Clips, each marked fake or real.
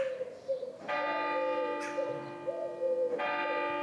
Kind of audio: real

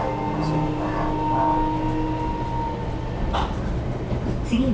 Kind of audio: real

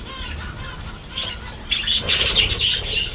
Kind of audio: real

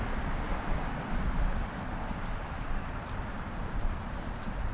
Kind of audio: real